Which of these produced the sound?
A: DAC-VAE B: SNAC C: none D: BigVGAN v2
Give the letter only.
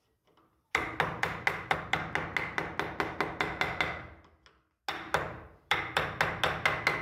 C